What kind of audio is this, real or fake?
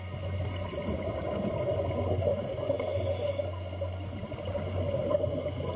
real